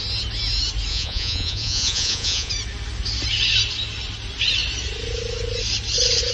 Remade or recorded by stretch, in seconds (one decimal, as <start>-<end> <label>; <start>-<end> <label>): 0.0-0.9 recorded; 0.9-2.5 remade; 2.5-6.3 recorded